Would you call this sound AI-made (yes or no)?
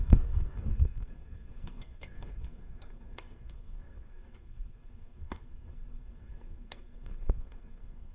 yes